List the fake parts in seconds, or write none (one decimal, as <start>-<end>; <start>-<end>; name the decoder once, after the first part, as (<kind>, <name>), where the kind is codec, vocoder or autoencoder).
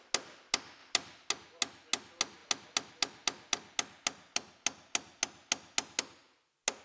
none